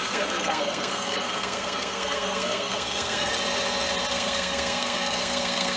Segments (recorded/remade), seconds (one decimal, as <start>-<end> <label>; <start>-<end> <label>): 0.0-3.3 remade; 3.3-4.1 recorded; 4.1-5.8 remade